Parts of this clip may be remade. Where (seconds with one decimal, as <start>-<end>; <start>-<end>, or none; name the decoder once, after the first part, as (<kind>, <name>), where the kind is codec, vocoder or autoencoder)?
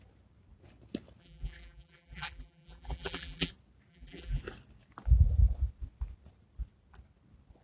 1.2-3.5 (vocoder, BigVGAN v2); 3.9-4.4